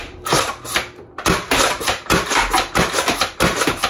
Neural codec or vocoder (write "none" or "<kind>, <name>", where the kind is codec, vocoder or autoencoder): none